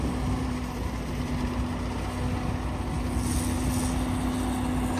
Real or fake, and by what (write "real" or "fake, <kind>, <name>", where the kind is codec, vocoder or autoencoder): real